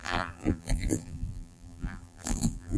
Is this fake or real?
fake